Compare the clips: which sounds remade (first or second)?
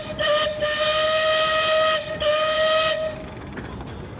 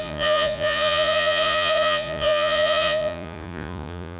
second